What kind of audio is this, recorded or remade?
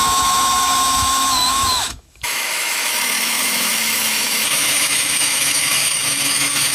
remade